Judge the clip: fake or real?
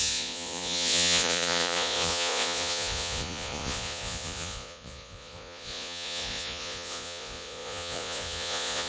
fake